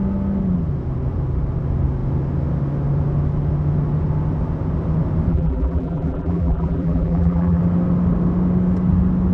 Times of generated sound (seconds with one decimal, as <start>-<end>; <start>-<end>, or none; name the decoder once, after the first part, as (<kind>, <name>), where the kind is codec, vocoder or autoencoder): 5.3-7.6 (vocoder, BigVGAN v2)